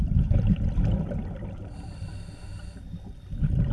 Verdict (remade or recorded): recorded